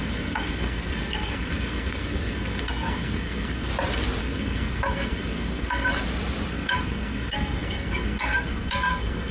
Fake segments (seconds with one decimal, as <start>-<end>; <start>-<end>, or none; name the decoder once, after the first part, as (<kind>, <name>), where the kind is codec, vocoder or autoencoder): 0.0-3.7 (codec, SNAC); 4.2-5.9; 6.5-9.3